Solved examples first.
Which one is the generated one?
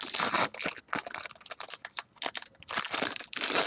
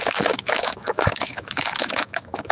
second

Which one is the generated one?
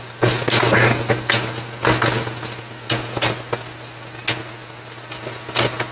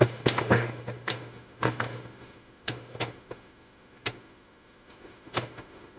second